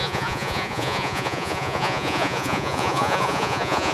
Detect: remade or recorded remade